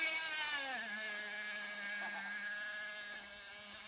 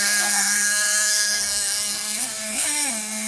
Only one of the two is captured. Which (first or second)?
first